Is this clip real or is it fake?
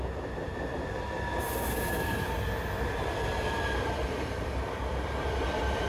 real